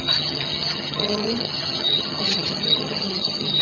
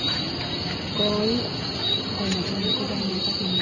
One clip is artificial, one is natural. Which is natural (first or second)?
second